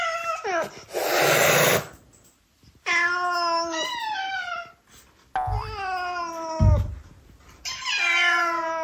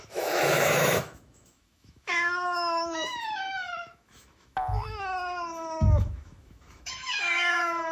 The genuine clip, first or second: first